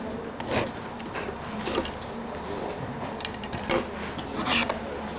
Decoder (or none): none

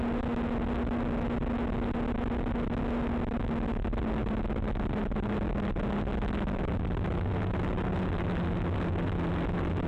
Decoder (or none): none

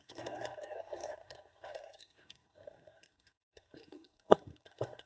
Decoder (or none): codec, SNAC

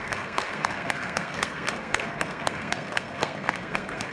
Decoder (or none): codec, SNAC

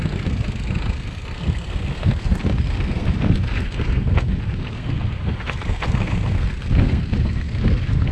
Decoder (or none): codec, SNAC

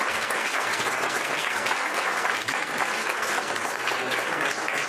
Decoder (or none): codec, SNAC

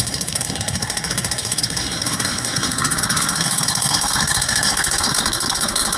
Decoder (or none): codec, SNAC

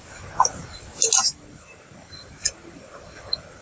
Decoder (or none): none